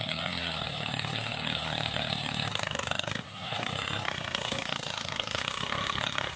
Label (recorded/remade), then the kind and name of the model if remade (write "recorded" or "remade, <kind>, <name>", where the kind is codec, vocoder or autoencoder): remade, codec, SNAC